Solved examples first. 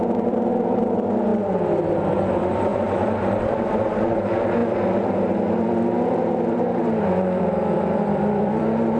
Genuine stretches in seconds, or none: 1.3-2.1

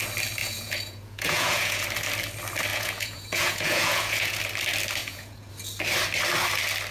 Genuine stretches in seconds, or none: 0.0-0.4; 1.8-2.7; 4.4-5.0; 5.5-6.9

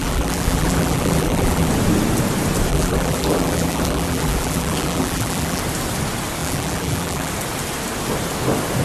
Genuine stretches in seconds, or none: 1.7-2.7; 5.6-6.4; 7.3-8.8

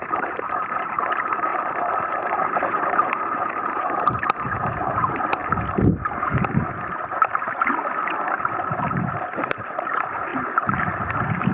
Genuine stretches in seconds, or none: 1.5-2.2; 5.4-8.4

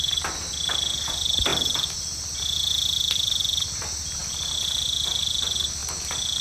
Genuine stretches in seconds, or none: 1.5-2.4; 5.8-6.4

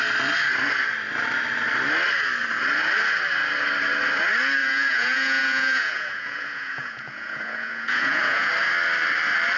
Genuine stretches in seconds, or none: 0.0-4.6; 8.5-9.6

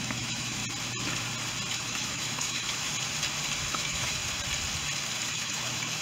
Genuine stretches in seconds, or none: 0.6-1.7; 2.9-3.7; 4.2-5.3